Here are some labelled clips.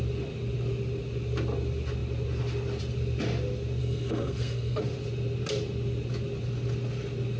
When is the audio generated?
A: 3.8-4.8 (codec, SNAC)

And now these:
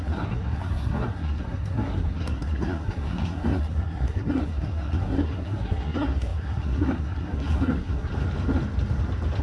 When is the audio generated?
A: 0.0-8.1 (codec, SNAC)

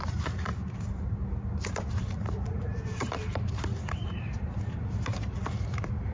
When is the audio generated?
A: 0.0-6.1 (vocoder, BigVGAN v2)

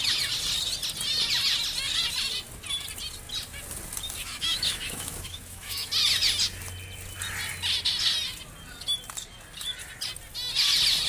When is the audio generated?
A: 4.2-5.9 (autoencoder, DAC-VAE)

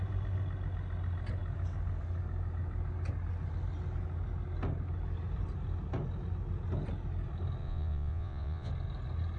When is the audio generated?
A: 7.6-8.7 (vocoder, Vocos)

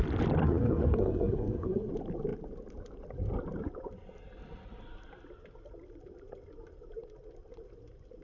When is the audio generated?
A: 0.4-1.9 (codec, SNAC)

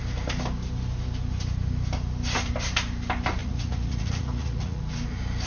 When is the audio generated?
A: 3.4-4.8 (vocoder, Vocos)